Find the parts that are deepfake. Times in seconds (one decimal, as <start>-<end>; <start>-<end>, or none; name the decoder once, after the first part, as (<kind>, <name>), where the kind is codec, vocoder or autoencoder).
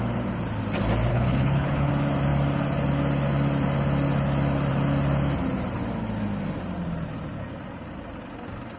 1.1-1.9 (codec, HILCodec)